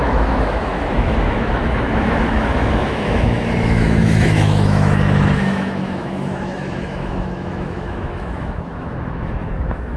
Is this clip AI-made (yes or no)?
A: yes